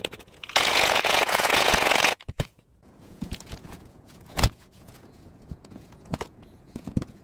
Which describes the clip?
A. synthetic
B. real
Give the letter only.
A